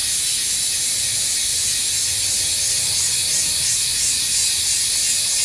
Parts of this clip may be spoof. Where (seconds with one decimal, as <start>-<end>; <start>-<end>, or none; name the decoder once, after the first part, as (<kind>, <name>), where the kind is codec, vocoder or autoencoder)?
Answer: none